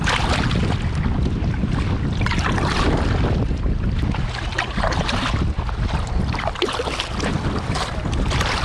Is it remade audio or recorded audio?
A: recorded